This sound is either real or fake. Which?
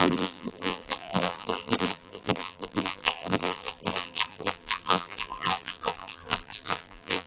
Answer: fake